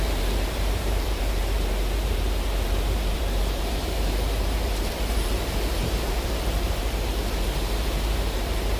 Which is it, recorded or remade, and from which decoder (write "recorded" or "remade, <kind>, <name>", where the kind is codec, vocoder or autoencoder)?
remade, vocoder, BigVGAN v2